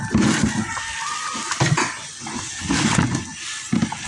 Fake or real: real